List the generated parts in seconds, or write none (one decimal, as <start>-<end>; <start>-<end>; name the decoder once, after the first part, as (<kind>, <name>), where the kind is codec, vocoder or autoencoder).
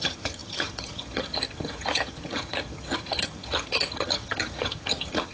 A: 0.0-5.3 (vocoder, HiFi-GAN)